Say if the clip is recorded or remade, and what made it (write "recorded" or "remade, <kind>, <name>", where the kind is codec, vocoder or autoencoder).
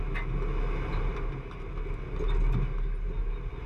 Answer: recorded